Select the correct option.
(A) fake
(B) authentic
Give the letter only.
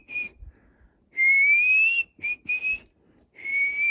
B